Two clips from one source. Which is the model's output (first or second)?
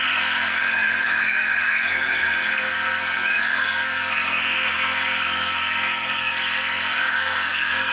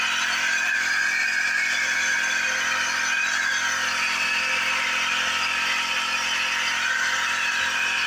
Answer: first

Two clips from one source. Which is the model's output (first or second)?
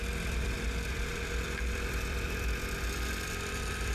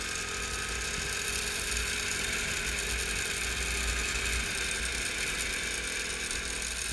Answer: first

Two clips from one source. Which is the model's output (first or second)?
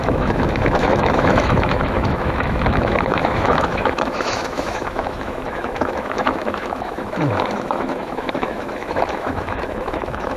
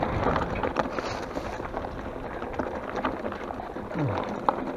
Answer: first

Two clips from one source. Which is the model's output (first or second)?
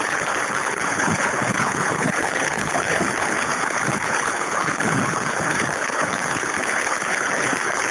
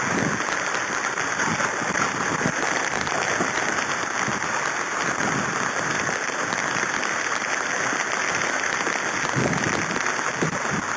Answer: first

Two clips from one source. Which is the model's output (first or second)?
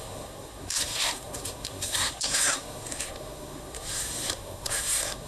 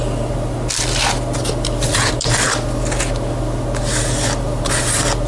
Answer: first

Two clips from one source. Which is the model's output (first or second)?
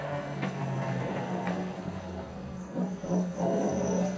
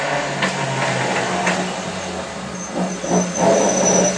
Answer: first